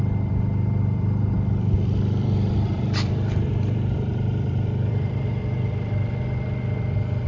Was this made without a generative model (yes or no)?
no